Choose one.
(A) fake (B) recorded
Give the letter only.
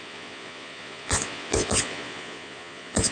A